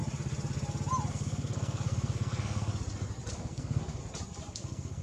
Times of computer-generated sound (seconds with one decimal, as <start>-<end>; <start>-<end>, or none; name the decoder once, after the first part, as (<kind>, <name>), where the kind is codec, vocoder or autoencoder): 1.1-2.7 (codec, SNAC); 3.3-4.0; 4.5-5.0